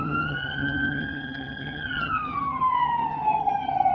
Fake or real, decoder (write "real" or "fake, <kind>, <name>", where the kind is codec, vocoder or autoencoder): fake, vocoder, HiFi-GAN